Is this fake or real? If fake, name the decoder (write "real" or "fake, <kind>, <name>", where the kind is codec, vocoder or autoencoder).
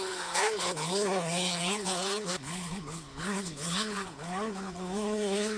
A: fake, codec, HILCodec